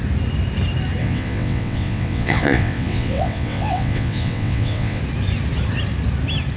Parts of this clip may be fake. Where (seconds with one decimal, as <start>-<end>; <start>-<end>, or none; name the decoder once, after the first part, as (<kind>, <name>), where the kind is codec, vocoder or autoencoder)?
1.0-5.0 (vocoder, WaveNeXt)